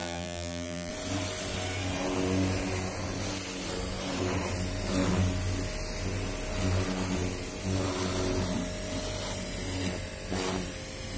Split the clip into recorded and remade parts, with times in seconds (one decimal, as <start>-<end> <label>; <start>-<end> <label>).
0.0-0.9 remade; 0.9-11.2 recorded